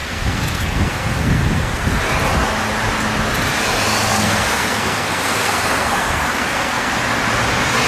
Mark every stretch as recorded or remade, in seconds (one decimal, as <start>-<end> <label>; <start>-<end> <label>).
0.0-2.0 remade; 2.0-4.1 recorded; 4.1-6.9 remade; 6.9-7.9 recorded